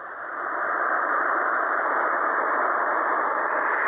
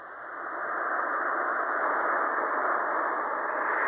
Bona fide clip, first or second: second